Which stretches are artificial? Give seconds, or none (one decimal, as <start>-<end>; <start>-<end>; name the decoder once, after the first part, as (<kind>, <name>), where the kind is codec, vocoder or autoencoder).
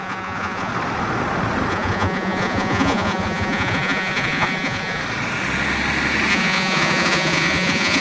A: 0.0-0.7 (vocoder, Vocos); 1.7-5.0; 6.3-8.0